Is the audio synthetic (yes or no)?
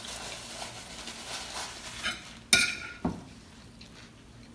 no